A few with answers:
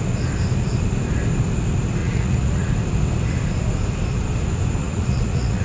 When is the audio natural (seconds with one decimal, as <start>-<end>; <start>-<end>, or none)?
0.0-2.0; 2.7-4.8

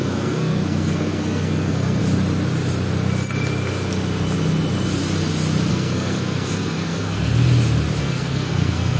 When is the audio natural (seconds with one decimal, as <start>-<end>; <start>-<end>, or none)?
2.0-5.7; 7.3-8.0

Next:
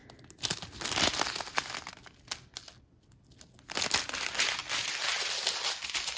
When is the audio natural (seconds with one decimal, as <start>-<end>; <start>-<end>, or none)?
0.0-6.2